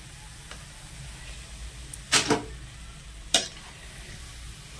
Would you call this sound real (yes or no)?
yes